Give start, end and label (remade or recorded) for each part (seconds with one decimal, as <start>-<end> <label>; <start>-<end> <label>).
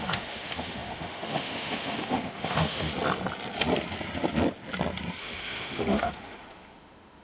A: 0.0-2.9 remade; 2.9-5.2 recorded; 5.2-7.2 remade